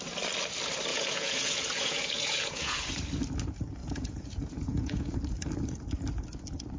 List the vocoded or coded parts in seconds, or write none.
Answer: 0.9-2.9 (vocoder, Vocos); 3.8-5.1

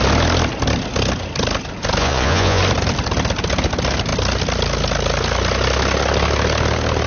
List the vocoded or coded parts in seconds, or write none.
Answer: 2.0-2.6 (vocoder, Vocos)

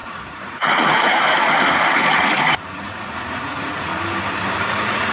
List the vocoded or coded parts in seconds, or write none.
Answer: 0.0-3.9 (vocoder, Vocos); 4.6-5.1

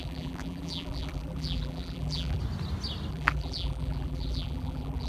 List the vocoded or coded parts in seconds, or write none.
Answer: 0.0-2.4 (vocoder, BigVGAN v2); 3.1-5.1

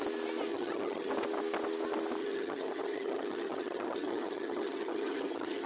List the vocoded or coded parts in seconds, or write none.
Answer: 0.5-1.1 (vocoder, HiFi-GAN); 2.2-5.7

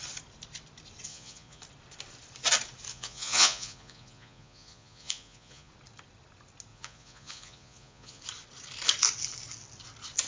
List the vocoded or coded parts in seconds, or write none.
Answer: 1.1-1.6 (vocoder, Vocos); 2.9-5.7; 6.7-8.2